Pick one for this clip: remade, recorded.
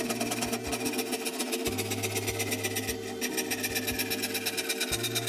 recorded